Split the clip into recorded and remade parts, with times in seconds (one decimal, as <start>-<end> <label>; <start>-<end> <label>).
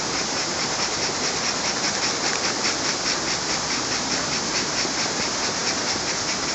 0.0-0.5 recorded; 0.5-1.8 remade; 1.8-6.5 recorded